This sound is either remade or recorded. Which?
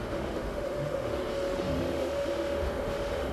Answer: remade